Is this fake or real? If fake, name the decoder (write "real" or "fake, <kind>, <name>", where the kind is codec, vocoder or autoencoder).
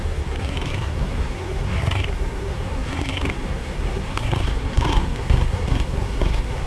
fake, codec, SNAC